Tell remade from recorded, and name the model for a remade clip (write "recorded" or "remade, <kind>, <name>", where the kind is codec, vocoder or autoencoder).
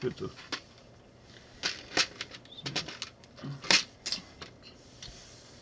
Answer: recorded